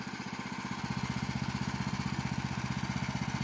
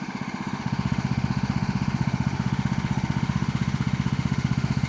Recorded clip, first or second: first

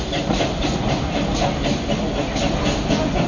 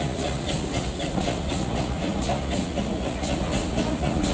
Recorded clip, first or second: first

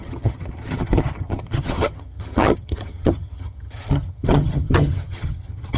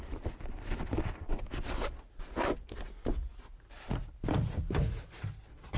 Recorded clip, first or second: second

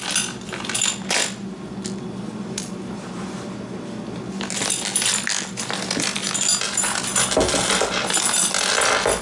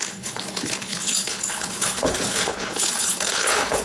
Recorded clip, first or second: first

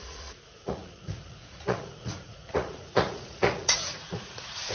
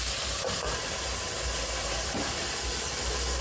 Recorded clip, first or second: second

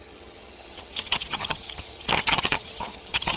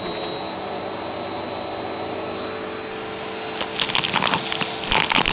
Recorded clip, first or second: second